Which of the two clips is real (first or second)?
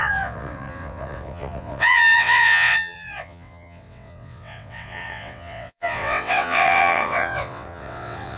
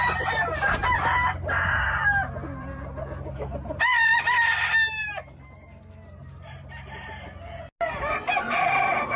second